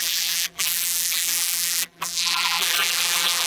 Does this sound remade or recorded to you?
remade